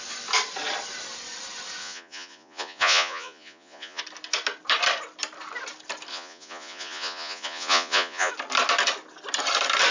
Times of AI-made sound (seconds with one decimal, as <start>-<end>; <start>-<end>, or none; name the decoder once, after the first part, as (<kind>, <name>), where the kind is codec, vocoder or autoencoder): 1.8-4.0 (vocoder, Vocos); 6.1-8.3